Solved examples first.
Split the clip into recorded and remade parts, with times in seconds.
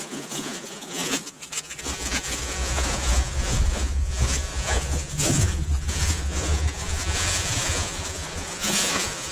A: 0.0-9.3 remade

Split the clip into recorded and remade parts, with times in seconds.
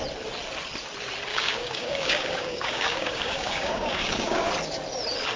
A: 0.0-1.3 recorded; 1.3-4.5 remade; 4.5-5.4 recorded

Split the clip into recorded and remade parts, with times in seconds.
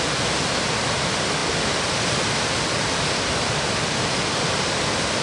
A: 0.0-5.2 recorded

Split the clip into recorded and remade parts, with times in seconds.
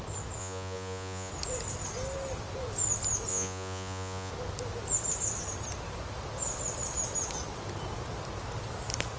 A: 0.0-0.4 recorded; 0.4-1.3 remade; 1.3-3.3 recorded; 3.3-4.3 remade; 4.3-9.2 recorded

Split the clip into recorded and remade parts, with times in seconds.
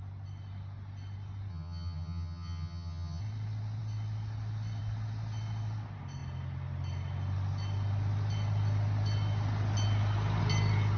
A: 0.0-1.5 recorded; 1.5-3.2 remade; 3.2-11.0 recorded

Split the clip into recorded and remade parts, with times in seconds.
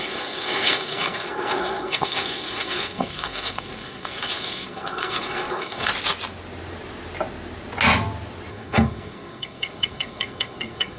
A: 0.0-5.9 remade; 5.9-8.5 recorded; 8.5-11.0 remade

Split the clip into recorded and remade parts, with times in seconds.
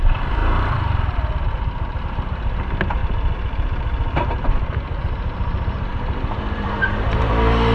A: 0.0-0.4 recorded; 0.4-2.0 remade; 2.0-3.0 recorded; 3.0-7.3 remade; 7.3-7.7 recorded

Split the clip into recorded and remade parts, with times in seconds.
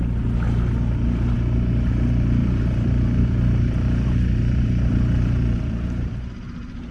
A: 0.0-2.4 recorded; 2.4-6.2 remade; 6.2-6.9 recorded